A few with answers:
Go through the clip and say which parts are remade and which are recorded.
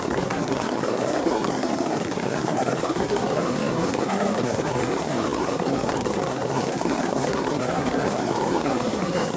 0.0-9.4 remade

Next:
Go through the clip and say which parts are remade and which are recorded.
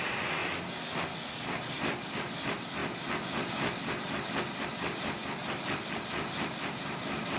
0.0-7.4 recorded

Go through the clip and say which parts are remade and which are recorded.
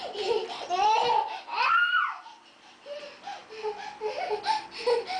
0.0-5.2 recorded